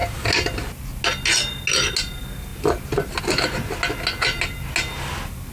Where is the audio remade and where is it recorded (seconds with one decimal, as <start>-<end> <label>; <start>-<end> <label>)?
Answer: 0.0-5.5 recorded